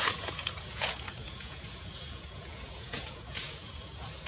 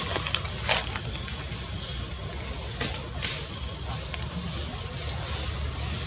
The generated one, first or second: first